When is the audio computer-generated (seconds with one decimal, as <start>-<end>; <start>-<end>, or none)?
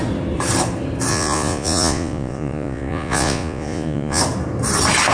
1.1-4.2